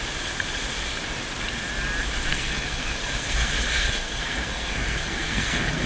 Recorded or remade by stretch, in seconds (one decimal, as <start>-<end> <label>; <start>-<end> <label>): 0.0-2.3 recorded; 2.3-5.9 remade